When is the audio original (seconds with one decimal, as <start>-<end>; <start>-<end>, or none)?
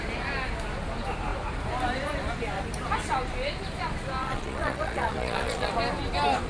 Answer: 0.0-4.2; 5.7-6.5